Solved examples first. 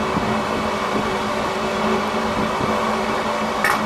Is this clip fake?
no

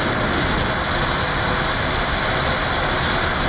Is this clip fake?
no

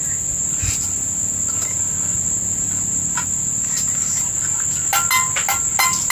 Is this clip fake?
no